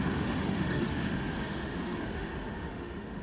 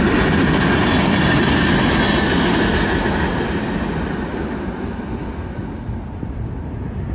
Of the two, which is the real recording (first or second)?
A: second